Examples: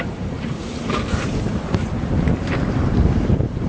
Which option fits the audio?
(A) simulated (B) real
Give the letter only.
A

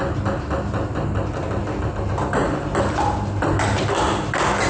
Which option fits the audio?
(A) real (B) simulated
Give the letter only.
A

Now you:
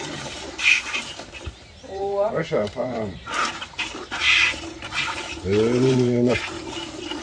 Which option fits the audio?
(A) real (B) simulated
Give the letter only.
B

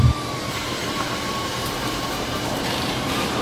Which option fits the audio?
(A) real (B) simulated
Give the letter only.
B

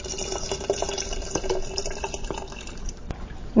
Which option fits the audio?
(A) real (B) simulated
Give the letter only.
B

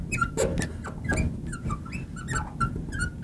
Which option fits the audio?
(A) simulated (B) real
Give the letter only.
B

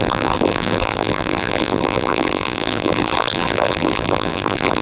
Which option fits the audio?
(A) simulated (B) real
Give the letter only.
A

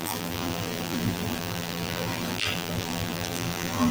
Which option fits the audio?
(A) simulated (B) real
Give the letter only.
A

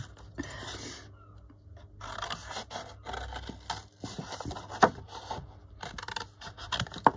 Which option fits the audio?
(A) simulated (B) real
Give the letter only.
B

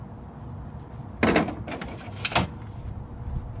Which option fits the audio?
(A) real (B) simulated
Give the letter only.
A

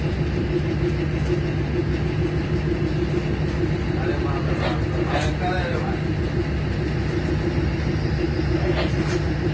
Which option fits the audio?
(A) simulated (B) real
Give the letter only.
B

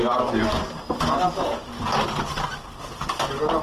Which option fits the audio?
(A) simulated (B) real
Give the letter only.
B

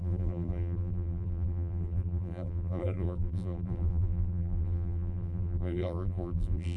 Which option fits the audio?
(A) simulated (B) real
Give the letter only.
A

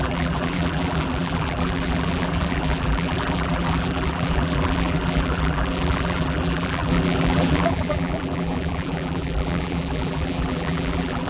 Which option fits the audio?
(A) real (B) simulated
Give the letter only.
B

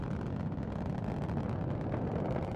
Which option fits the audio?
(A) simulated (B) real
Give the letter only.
B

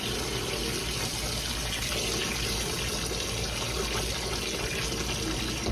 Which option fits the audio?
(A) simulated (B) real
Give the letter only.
B